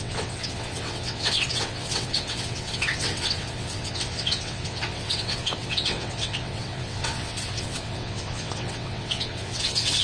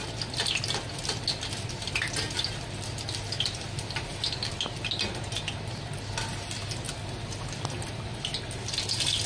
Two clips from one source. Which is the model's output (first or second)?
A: first